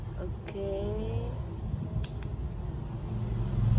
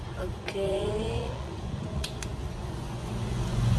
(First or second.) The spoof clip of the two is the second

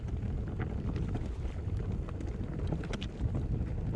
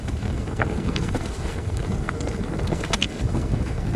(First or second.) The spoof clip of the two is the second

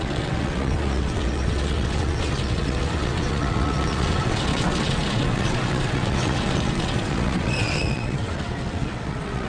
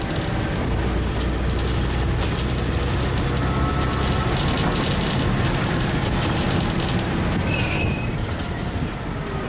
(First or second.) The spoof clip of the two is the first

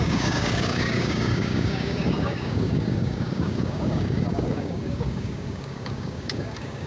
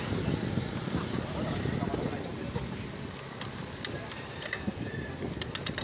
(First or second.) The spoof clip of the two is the first